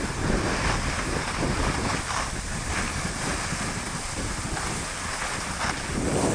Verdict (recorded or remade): recorded